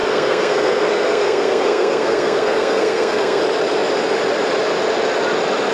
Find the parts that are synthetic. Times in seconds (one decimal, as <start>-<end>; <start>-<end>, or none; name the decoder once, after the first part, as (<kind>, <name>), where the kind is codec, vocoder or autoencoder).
0.0-3.4 (codec, SNAC)